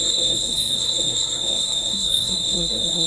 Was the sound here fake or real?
fake